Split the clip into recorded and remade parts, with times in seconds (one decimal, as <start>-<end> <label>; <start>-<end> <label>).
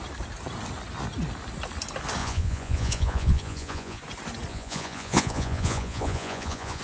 0.0-2.2 recorded; 2.2-4.0 remade; 4.0-4.5 recorded; 4.5-6.8 remade